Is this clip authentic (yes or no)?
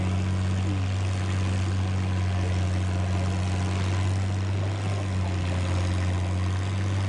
yes